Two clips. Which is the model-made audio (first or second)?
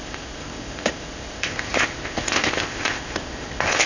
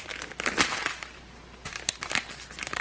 first